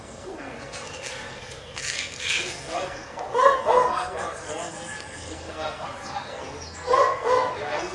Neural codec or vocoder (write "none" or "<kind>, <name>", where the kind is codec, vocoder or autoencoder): codec, SNAC